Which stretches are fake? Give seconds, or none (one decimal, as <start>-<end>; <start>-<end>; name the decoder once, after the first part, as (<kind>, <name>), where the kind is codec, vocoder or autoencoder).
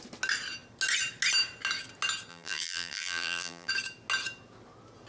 2.3-3.7 (vocoder, BigVGAN v2)